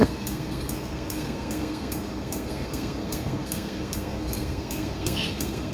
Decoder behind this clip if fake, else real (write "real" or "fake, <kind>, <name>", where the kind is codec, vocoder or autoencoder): fake, codec, SNAC